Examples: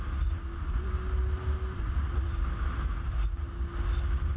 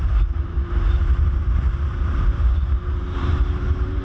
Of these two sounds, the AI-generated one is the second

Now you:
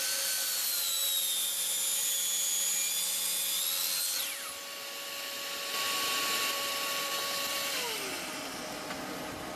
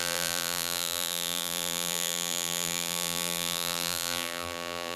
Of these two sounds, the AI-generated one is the second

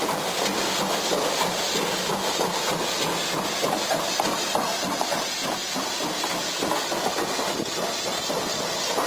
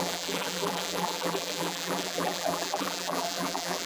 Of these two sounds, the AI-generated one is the second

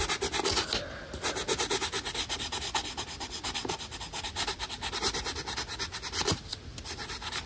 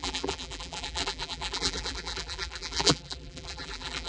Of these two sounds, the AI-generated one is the second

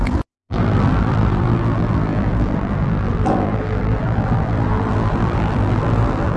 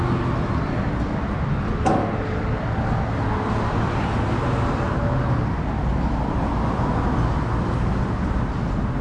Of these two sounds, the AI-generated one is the first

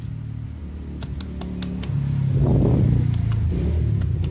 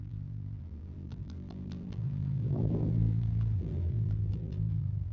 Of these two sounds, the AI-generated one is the second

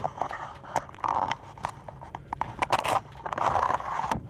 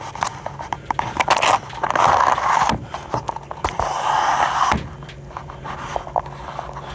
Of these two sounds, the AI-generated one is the first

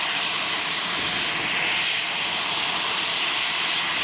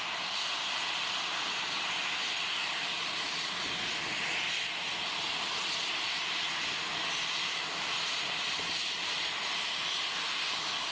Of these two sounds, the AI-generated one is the second